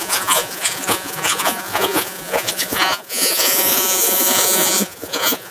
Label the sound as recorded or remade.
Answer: remade